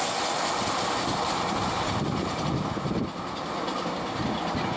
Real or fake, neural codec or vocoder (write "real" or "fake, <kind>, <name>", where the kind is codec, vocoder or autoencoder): real